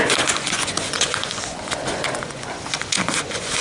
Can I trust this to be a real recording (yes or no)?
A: no